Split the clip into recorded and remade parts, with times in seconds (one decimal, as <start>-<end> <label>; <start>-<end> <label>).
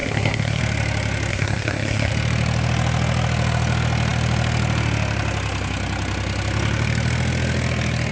0.0-0.6 remade; 0.6-1.3 recorded; 1.3-2.1 remade; 2.1-8.1 recorded